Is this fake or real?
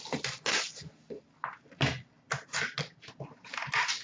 real